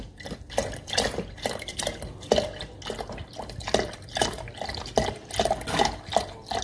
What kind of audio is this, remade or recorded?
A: recorded